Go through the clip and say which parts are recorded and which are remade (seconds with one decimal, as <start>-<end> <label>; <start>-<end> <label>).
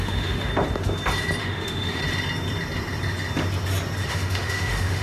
0.0-0.5 remade; 0.5-1.4 recorded; 1.4-2.0 remade; 2.0-4.1 recorded; 4.1-5.0 remade